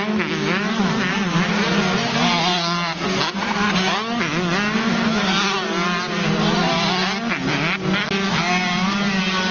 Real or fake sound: real